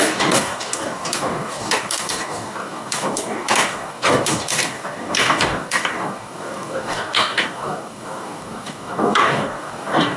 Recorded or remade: remade